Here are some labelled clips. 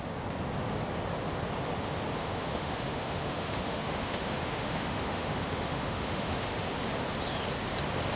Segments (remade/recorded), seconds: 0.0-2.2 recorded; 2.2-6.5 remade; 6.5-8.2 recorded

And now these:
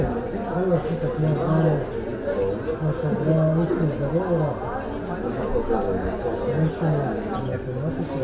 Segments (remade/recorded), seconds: 0.0-8.2 recorded

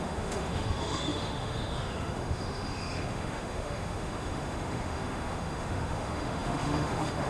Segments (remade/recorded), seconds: 0.0-7.3 remade